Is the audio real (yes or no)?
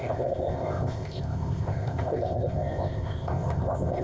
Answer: no